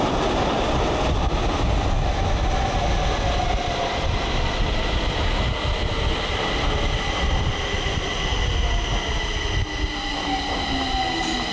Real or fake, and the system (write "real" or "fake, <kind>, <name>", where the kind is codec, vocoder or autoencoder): real